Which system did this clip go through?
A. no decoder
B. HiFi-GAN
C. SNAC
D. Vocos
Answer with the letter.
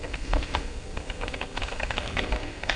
C